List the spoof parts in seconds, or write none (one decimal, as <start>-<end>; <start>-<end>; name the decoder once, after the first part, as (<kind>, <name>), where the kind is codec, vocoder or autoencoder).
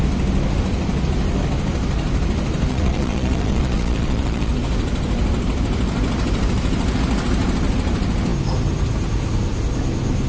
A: 2.7-4.5 (vocoder, Vocos)